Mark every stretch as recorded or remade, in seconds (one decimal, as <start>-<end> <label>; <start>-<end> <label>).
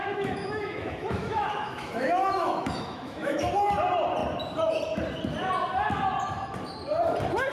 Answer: 0.0-3.5 remade; 3.5-7.5 recorded